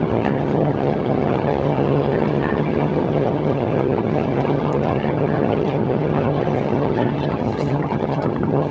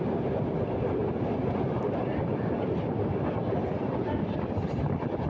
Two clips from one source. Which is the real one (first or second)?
second